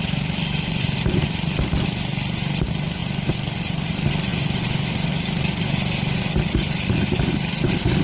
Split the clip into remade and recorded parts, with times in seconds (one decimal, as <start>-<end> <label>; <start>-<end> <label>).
0.0-8.0 recorded